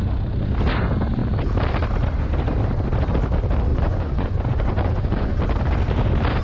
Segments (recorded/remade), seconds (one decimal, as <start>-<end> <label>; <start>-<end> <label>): 0.0-3.7 recorded; 3.7-5.4 remade; 5.4-6.4 recorded